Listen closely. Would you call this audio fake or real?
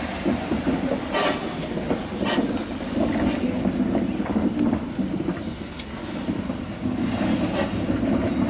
real